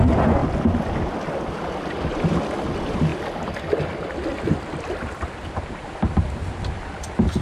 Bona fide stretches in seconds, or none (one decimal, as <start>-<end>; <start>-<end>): 0.0-7.4